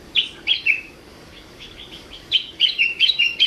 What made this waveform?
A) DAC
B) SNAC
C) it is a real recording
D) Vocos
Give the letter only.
A